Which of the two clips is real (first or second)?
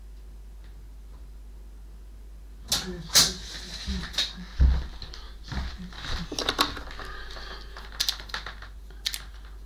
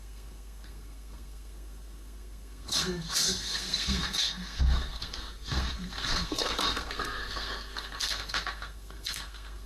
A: first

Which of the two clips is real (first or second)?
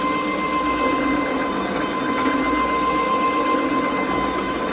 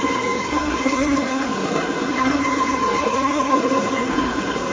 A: first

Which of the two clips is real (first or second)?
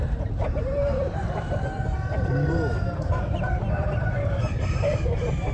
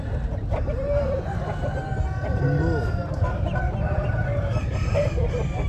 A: second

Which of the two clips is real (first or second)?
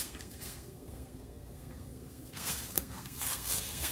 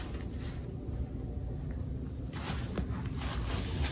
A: second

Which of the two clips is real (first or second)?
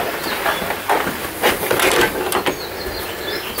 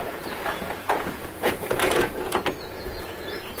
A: first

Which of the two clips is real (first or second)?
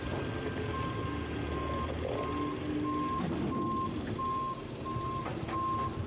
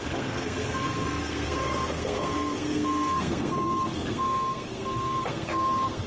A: first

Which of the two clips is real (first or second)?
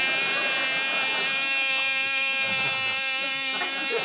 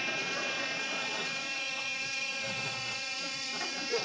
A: first